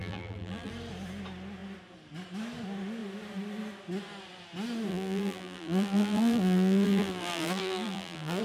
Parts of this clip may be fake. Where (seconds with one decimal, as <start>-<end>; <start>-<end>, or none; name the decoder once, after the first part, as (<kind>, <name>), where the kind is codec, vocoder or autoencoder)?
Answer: 0.0-0.7 (vocoder, BigVGAN v2); 4.9-8.4